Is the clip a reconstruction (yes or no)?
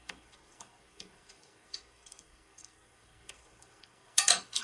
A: yes